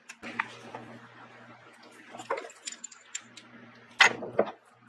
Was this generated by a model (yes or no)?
no